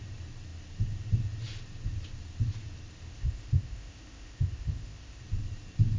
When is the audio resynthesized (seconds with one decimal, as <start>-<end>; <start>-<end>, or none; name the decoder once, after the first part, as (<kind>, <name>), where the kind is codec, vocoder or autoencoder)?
3.1-5.2 (codec, ZipCodec)